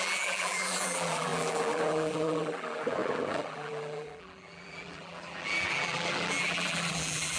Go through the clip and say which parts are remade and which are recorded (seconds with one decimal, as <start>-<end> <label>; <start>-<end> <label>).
0.0-7.4 remade